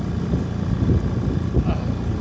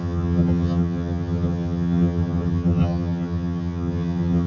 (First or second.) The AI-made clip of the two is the second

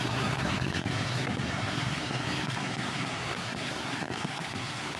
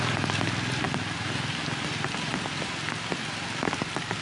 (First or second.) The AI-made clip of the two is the first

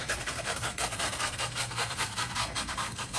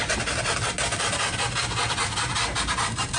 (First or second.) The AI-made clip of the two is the first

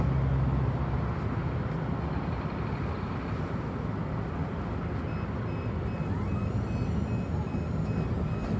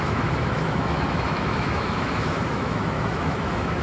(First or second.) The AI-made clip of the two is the second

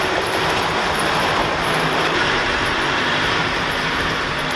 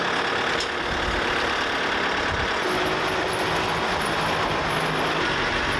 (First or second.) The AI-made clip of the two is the first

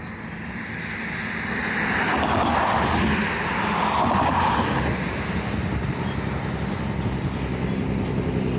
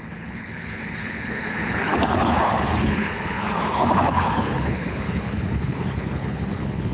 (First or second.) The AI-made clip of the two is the second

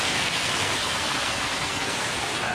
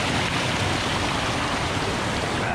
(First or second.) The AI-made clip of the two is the first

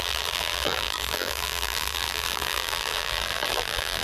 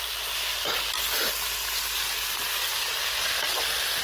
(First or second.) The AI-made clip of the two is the first